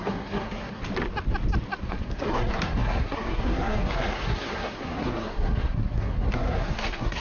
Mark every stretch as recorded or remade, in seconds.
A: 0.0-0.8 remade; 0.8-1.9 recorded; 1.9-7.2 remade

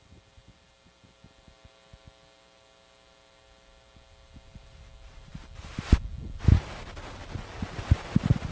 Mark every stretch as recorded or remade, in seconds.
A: 0.0-8.5 recorded

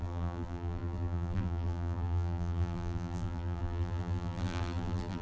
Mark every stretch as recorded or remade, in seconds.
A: 0.0-5.2 remade

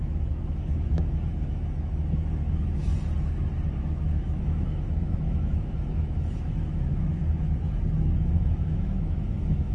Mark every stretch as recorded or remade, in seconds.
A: 0.0-2.9 remade; 2.9-3.7 recorded; 3.7-7.2 remade; 7.2-8.2 recorded; 8.2-9.7 remade

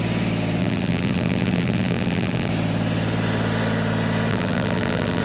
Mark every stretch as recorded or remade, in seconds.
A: 0.0-0.6 recorded; 0.6-2.5 remade; 2.5-4.3 recorded; 4.3-5.2 remade

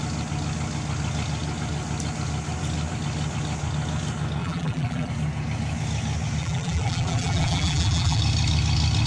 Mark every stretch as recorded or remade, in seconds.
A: 0.0-4.4 recorded; 4.4-5.1 remade; 5.1-6.4 recorded; 6.4-8.2 remade; 8.2-9.1 recorded

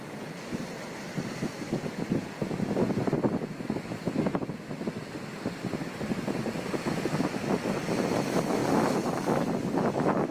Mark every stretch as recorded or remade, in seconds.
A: 0.0-10.3 recorded

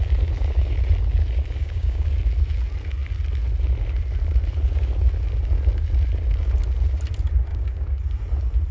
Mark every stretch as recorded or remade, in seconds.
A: 0.0-1.6 recorded; 1.6-2.1 remade; 2.1-7.5 recorded; 7.5-8.0 remade; 8.0-8.7 recorded